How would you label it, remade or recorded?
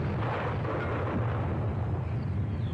recorded